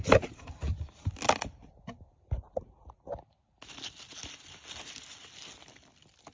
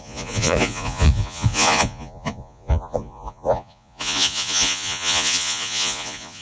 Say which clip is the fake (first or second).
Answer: second